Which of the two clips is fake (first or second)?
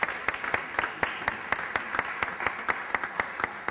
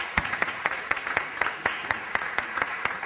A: second